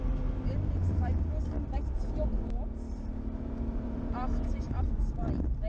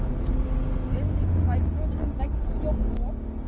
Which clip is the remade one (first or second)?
first